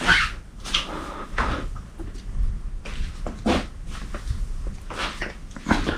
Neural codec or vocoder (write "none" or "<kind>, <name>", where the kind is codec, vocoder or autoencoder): none